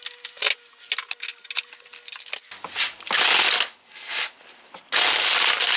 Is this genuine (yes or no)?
yes